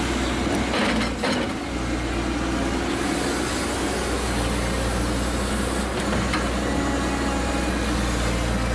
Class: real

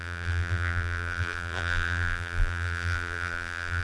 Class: fake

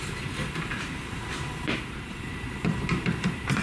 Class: fake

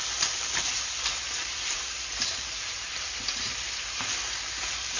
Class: fake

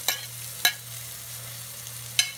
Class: real